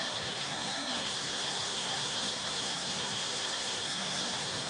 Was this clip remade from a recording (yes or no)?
yes